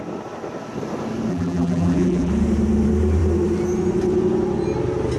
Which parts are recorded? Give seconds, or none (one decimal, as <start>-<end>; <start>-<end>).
0.0-1.3; 2.3-5.2